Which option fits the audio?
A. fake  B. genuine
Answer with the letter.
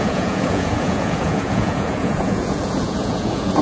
A